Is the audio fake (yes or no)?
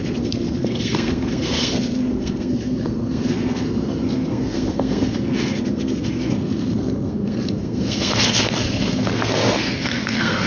yes